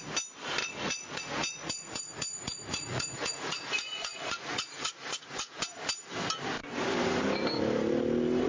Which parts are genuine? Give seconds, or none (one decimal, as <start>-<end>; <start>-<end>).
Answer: 0.0-0.6; 5.6-8.5